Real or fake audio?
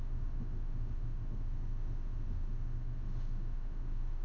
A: fake